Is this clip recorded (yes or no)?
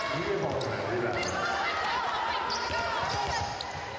yes